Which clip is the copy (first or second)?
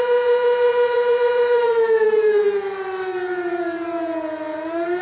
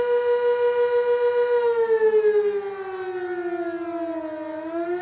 first